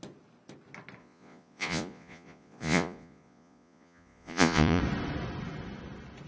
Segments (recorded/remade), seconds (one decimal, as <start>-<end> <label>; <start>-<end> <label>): 0.0-1.0 recorded; 1.0-4.8 remade; 4.8-6.3 recorded